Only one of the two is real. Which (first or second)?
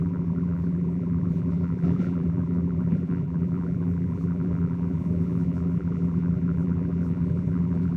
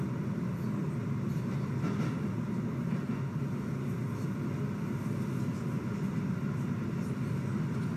second